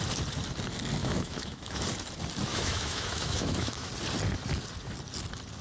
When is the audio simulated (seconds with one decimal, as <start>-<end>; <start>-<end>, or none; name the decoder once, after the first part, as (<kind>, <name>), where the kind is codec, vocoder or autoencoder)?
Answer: 1.0-1.8 (autoencoder, DAC-VAE); 2.5-3.9